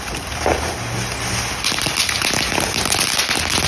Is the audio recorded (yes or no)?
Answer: yes